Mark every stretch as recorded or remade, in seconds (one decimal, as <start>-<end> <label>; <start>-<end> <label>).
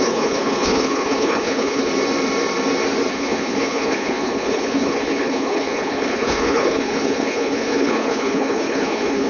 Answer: 0.0-1.9 remade; 1.9-3.1 recorded; 3.1-9.3 remade